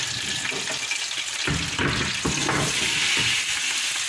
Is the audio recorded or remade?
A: recorded